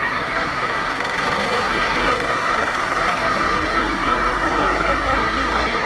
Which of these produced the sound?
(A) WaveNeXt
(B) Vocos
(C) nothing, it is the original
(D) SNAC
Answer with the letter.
D